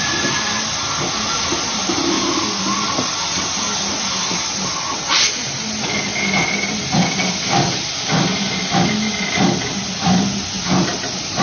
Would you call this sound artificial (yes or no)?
no